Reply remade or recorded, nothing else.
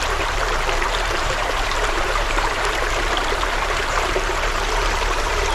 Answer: remade